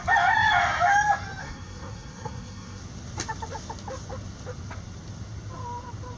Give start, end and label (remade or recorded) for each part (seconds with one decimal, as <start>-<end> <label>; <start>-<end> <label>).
0.0-1.4 recorded; 1.4-2.8 remade; 2.8-6.2 recorded